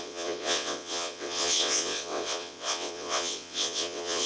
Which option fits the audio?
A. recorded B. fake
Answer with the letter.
B